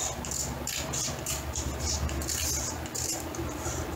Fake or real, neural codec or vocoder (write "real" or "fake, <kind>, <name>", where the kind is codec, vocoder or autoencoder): real